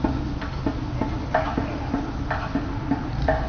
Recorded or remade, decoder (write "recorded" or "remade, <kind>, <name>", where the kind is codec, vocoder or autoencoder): recorded